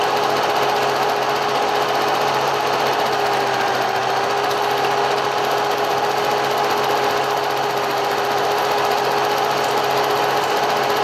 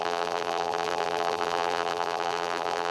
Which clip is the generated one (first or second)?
second